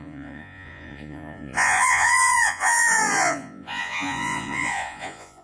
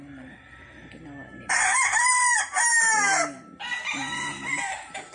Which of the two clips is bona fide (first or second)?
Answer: second